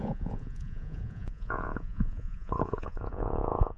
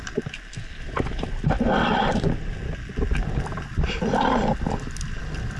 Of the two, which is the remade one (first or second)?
first